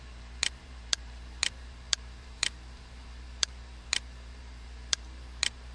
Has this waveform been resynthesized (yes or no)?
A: yes